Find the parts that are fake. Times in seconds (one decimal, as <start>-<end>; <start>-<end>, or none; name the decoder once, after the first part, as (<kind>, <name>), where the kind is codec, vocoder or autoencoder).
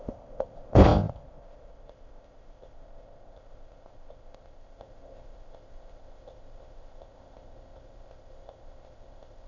0.0-9.5 (codec, ZipCodec)